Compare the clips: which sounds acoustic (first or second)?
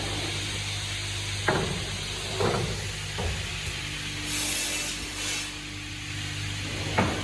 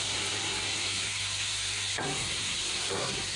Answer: first